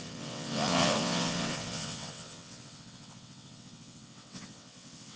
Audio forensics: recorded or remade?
remade